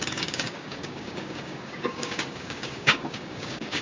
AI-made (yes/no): yes